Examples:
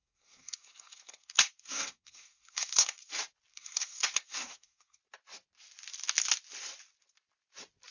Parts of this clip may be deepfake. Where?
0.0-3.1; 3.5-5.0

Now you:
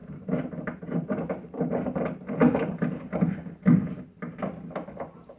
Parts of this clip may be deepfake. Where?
none

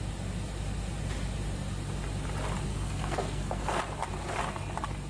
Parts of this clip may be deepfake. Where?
2.7-3.8

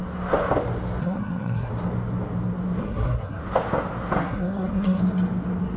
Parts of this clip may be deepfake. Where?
1.0-1.7; 2.8-3.4; 4.2-5.0